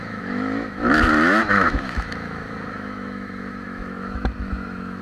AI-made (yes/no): yes